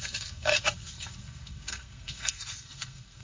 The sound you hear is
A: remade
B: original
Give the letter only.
A